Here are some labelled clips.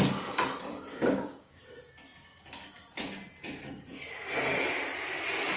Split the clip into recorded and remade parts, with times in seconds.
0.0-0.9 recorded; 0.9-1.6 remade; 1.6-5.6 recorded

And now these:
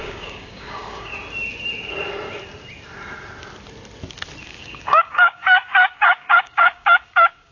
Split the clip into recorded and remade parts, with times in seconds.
0.0-1.1 remade; 1.1-4.4 recorded; 4.4-7.5 remade

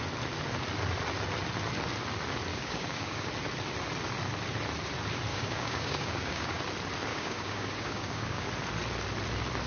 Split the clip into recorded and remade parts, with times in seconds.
0.0-2.5 recorded; 2.5-3.3 remade; 3.3-5.3 recorded; 5.3-6.6 remade; 6.6-7.1 recorded; 7.1-8.5 remade; 8.5-9.7 recorded

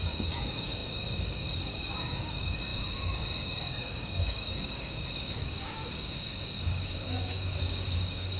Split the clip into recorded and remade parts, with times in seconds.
0.0-8.4 remade